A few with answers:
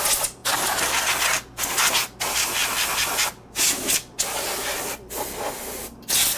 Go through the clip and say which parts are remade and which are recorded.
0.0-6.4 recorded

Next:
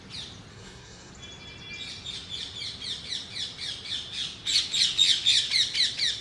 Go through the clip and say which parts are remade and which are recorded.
0.0-0.5 recorded; 0.5-1.1 remade; 1.1-6.2 recorded

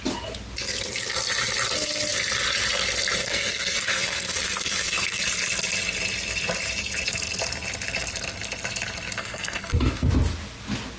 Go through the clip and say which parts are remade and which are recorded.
0.0-3.2 recorded; 3.2-5.2 remade; 5.2-9.2 recorded; 9.2-10.1 remade; 10.1-11.0 recorded

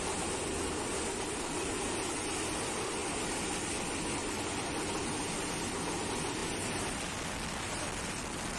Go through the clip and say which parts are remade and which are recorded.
0.0-8.6 recorded

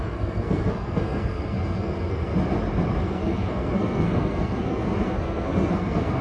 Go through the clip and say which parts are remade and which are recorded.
0.0-2.3 remade; 2.3-3.0 recorded; 3.0-6.2 remade

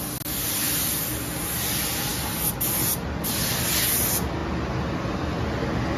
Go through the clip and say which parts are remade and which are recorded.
0.0-6.0 recorded